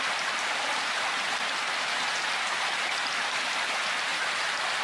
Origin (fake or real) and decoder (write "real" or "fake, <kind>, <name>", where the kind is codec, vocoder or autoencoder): real